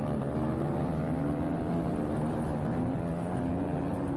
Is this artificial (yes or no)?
no